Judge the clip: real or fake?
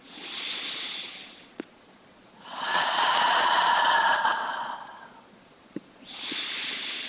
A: fake